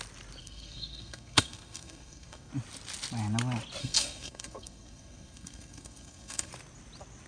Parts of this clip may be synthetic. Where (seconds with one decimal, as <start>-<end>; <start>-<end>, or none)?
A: 0.4-2.5; 3.8-6.5